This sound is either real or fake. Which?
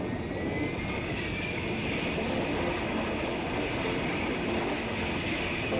real